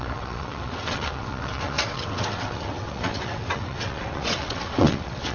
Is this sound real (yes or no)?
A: no